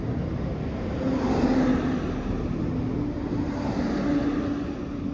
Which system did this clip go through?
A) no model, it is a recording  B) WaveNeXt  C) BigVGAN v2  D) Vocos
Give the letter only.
A